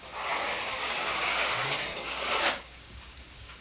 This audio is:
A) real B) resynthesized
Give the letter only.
B